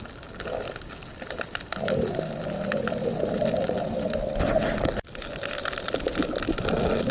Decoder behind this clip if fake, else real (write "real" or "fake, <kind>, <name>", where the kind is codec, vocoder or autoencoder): real